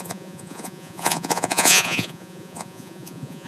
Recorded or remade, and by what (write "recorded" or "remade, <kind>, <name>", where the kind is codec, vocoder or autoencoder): remade, vocoder, Vocos